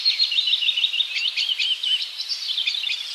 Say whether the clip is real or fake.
fake